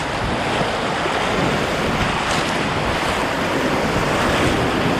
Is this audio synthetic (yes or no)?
no